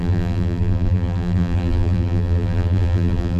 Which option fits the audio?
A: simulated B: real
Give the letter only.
A